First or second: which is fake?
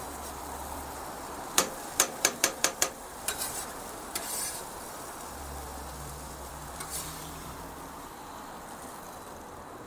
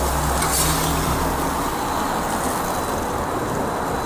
first